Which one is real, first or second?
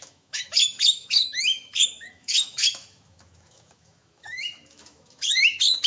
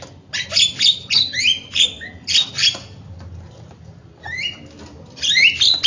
second